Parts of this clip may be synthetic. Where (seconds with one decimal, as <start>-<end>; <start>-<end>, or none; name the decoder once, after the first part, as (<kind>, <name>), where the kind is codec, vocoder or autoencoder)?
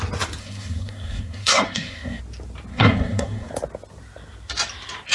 0.4-2.2 (codec, SNAC); 2.7-3.5